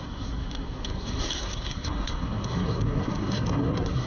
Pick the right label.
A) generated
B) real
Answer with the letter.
A